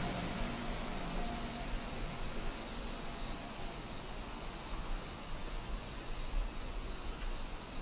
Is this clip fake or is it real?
fake